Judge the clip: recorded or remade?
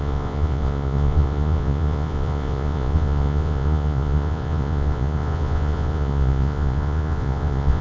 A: remade